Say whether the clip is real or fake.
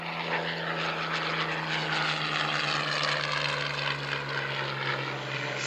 real